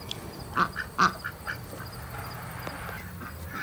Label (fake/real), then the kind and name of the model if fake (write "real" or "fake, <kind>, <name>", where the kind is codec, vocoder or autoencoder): real